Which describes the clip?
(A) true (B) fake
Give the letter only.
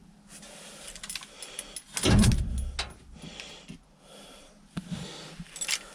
A